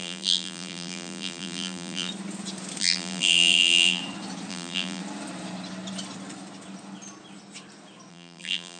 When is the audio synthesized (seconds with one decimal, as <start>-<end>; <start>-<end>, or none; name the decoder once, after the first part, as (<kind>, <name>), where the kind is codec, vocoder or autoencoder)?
0.0-2.1 (vocoder, BigVGAN v2); 2.8-4.0; 4.5-5.0; 8.1-8.8